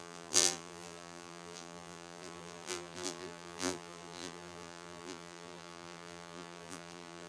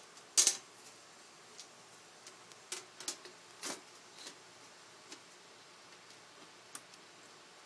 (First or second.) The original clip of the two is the second